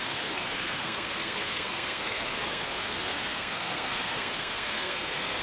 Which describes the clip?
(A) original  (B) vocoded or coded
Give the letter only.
B